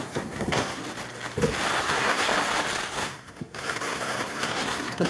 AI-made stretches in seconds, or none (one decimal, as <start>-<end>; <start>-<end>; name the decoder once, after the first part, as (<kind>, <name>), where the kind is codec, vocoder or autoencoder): 0.0-0.8 (codec, SNAC); 1.8-2.3; 2.9-5.1